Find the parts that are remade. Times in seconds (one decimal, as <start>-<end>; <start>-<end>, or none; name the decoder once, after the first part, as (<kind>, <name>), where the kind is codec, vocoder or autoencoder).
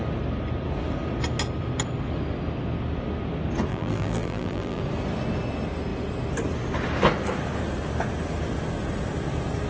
3.7-4.8 (vocoder, BigVGAN v2)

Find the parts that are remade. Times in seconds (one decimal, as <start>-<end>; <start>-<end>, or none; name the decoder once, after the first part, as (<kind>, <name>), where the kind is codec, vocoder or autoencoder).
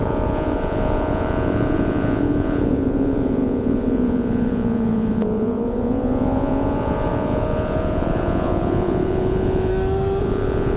0.0-9.7 (vocoder, Vocos); 10.2-10.8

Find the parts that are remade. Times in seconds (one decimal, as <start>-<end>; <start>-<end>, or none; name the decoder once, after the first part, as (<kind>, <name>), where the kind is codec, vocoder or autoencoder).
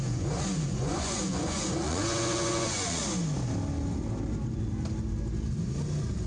0.0-3.0 (vocoder, Vocos)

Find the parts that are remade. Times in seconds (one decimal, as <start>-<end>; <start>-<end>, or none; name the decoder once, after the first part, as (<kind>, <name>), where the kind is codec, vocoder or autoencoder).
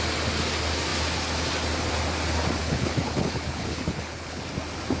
2.6-4.4 (codec, HILCodec)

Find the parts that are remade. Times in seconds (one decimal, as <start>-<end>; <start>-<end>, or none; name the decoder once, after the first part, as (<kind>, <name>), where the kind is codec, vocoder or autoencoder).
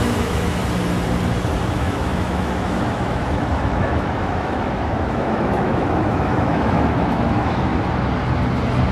0.0-0.6 (autoencoder, DAC-VAE); 1.7-7.7